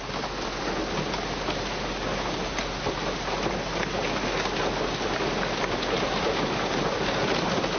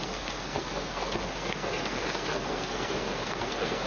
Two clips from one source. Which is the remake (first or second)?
second